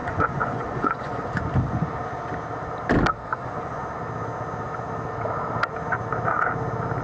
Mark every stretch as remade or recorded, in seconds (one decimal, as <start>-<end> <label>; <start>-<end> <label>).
0.0-1.3 remade; 1.3-3.3 recorded; 3.3-3.8 remade; 3.8-7.0 recorded